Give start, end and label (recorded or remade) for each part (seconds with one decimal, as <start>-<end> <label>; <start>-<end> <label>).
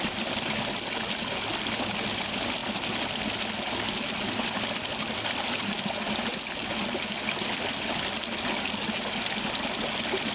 0.0-10.3 recorded